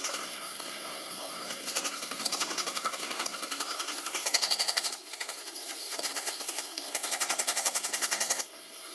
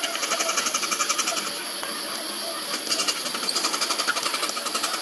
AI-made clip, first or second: first